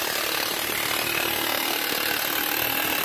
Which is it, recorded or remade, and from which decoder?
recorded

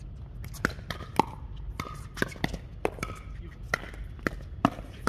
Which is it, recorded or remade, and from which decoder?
recorded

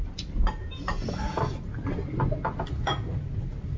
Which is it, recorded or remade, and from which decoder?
recorded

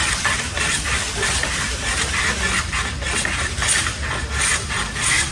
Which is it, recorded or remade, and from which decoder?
recorded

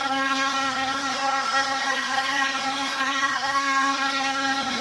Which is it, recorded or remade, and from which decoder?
remade, codec, SNAC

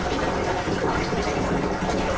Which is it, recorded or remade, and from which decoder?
recorded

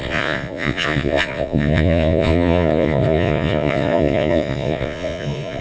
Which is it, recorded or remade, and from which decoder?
remade, vocoder, Vocos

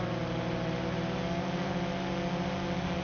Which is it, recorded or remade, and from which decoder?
recorded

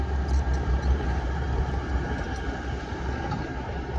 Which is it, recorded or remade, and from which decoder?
remade, vocoder, BigVGAN v2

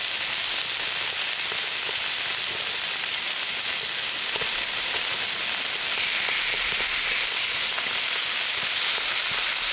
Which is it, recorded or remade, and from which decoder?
recorded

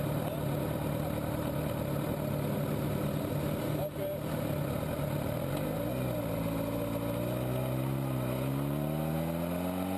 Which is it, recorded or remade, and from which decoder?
recorded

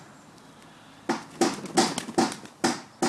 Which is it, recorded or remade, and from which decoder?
recorded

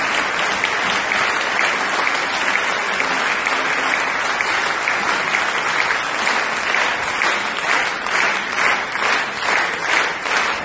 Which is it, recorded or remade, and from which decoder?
recorded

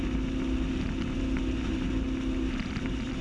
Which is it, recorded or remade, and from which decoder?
recorded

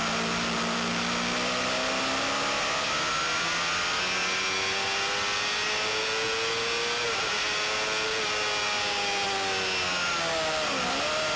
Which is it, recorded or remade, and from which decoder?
recorded